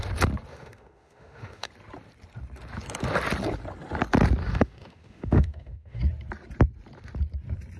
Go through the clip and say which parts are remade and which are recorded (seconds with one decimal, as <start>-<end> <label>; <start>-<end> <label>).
0.0-0.5 recorded; 0.5-1.7 remade; 1.7-4.4 recorded; 4.4-6.0 remade; 6.0-7.8 recorded